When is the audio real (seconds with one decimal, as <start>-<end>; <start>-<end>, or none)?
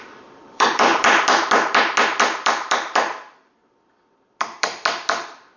0.9-2.2; 3.6-5.6